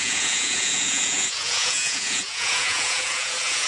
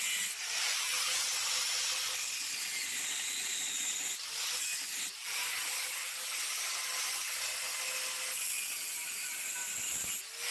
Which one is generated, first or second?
first